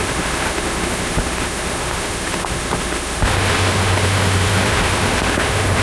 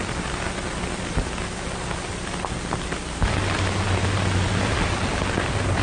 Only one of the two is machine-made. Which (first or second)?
first